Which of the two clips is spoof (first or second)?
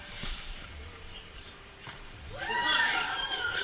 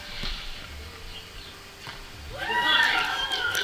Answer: first